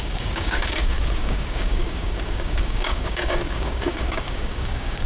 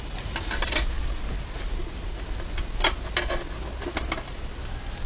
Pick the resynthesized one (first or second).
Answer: first